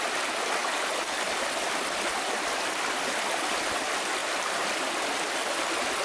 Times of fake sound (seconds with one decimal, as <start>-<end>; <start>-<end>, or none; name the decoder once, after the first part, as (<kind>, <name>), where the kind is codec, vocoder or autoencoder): 4.2-4.9 (vocoder, BigVGAN v2)